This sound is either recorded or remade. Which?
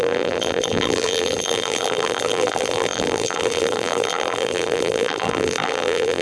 remade